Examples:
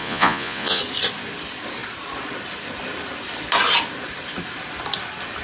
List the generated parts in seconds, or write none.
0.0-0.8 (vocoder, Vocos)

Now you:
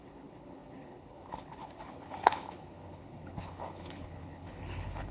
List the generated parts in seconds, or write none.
0.0-5.1 (codec, HILCodec)

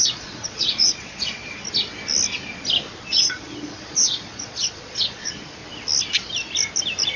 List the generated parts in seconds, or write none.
0.0-1.4 (vocoder, Vocos); 3.0-5.6

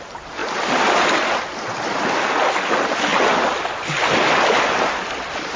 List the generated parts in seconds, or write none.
none

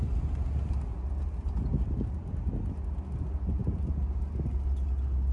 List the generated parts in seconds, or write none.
none

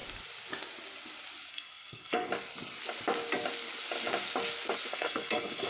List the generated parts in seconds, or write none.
1.5-2.3 (codec, SNAC); 4.9-5.7

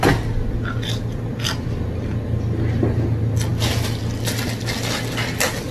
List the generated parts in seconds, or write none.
none